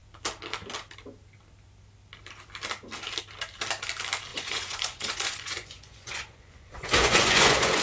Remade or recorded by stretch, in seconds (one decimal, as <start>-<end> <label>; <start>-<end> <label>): 0.0-4.3 recorded; 4.3-7.8 remade